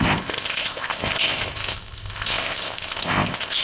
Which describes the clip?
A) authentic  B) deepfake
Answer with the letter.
B